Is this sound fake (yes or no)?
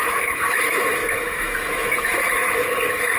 yes